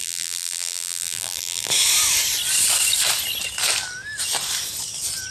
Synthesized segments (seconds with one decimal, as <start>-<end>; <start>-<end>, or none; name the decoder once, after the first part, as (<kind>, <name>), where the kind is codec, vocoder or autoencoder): 0.0-1.7 (vocoder, BigVGAN v2)